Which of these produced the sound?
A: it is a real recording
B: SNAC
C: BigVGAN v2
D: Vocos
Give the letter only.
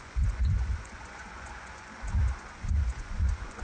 D